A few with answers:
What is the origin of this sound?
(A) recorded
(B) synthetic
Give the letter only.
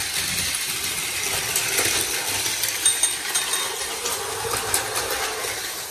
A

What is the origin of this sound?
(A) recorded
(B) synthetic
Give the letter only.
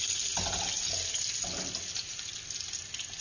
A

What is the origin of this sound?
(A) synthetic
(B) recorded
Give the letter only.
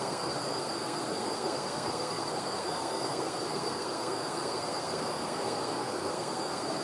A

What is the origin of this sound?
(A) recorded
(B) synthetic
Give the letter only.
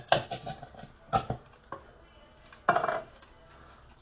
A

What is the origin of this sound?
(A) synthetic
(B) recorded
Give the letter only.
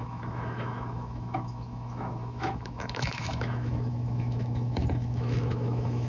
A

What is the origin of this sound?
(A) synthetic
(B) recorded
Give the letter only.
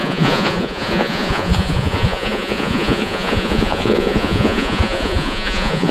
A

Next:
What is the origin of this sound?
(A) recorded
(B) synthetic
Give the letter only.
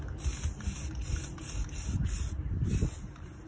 A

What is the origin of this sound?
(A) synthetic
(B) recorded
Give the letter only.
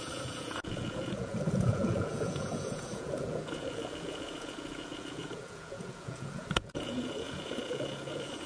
A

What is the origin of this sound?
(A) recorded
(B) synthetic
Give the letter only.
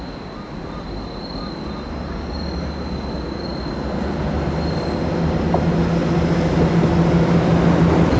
A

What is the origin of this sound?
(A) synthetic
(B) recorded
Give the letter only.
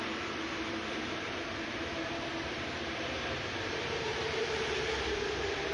A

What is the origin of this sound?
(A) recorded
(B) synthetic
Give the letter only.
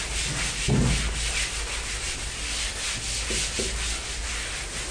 A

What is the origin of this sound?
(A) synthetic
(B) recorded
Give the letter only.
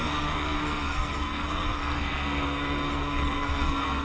A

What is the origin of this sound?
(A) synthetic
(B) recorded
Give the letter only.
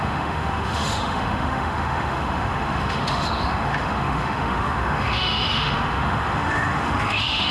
A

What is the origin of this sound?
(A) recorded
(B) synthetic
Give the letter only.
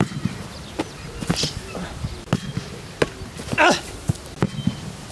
A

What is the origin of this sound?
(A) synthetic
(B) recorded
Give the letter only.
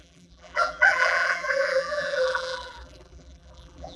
A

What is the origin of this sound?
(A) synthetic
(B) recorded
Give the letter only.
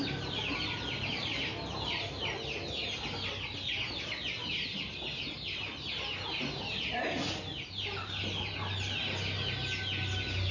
B